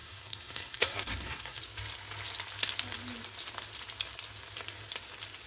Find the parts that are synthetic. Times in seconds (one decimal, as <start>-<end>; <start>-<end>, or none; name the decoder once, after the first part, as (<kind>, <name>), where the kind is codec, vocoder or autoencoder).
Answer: 0.0-1.6 (codec, SNAC)